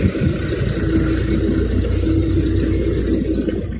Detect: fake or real real